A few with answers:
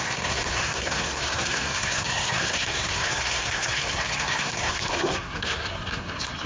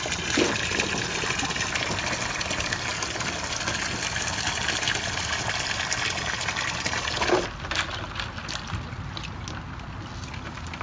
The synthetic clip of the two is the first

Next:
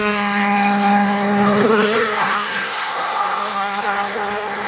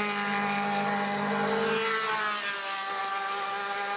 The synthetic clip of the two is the first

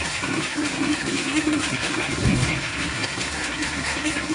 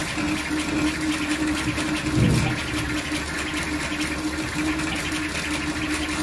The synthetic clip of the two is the first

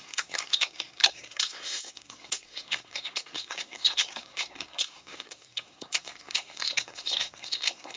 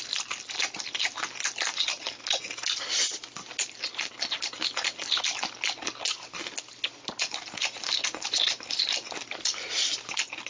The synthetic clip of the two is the first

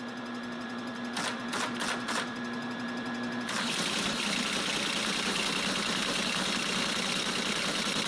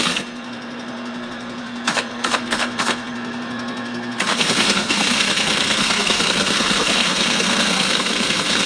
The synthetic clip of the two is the second